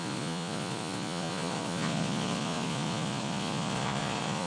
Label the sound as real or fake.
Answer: fake